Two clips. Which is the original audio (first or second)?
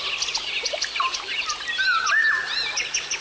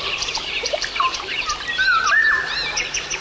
first